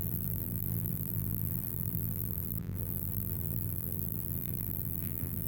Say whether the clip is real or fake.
fake